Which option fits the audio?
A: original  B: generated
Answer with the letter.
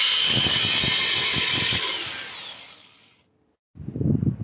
A